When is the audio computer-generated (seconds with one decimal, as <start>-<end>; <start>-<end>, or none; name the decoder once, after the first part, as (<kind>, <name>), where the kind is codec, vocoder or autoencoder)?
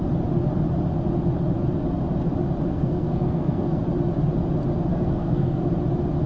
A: 2.7-3.8 (codec, SNAC); 4.9-5.7